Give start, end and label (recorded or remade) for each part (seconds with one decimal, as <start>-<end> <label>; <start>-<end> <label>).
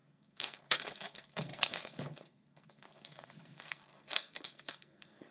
0.0-5.3 remade